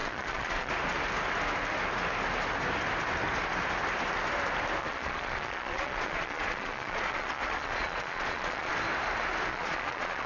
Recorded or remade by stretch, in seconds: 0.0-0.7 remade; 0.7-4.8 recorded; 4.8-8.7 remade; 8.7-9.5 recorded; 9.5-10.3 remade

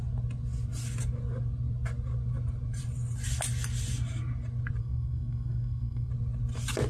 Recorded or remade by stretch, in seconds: 0.0-4.8 recorded; 4.8-6.1 remade; 6.1-6.9 recorded

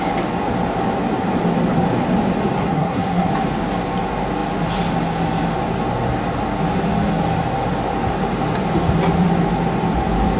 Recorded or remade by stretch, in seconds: 0.0-2.6 recorded; 2.6-3.3 remade; 3.3-10.4 recorded